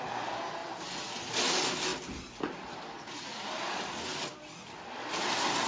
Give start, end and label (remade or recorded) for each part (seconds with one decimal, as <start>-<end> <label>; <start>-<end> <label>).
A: 0.0-5.7 recorded

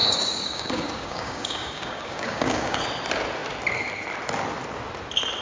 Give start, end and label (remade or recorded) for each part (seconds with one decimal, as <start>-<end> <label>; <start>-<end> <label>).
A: 0.0-2.8 remade; 2.8-5.4 recorded

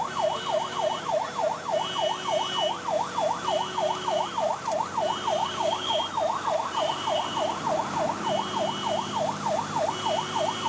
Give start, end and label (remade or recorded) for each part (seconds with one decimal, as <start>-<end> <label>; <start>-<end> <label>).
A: 0.0-5.4 recorded; 5.4-6.0 remade; 6.0-10.7 recorded

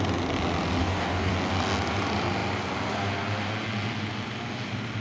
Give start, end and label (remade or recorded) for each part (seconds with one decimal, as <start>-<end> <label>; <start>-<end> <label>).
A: 0.0-0.8 recorded; 0.8-1.3 remade; 1.3-5.0 recorded

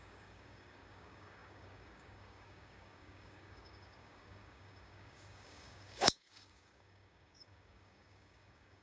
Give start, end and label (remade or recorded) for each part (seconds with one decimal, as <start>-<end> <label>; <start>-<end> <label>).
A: 0.0-8.8 remade

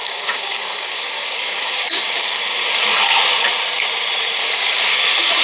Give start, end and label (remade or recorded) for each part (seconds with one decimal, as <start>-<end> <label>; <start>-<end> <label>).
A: 0.0-2.4 remade; 2.4-4.4 recorded; 4.4-5.4 remade

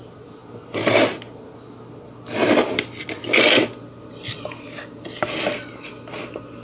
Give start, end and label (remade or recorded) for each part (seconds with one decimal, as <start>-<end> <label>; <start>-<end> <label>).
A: 0.0-6.6 recorded